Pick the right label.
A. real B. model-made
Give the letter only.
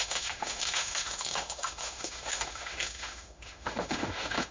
B